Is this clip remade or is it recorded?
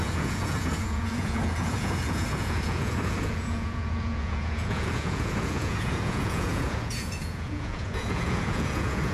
remade